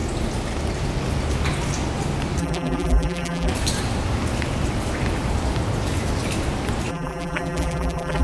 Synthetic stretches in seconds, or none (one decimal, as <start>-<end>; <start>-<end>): 2.4-3.5; 6.9-8.2